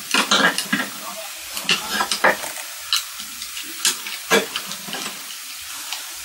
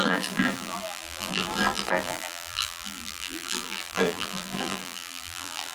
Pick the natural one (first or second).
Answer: first